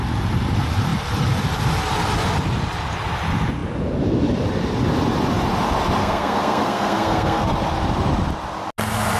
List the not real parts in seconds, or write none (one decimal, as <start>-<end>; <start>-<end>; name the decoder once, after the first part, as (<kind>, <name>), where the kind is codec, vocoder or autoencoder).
6.0-7.5 (codec, SNAC)